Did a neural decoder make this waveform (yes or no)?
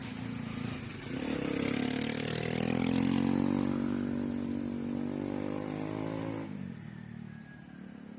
no